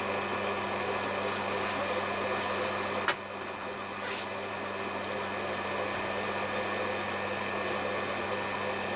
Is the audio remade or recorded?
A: recorded